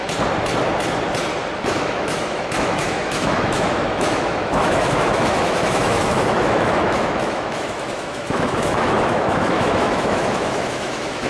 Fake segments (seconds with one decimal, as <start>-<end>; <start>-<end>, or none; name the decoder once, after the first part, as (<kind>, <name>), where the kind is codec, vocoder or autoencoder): 1.7-11.3 (autoencoder, DAC-VAE)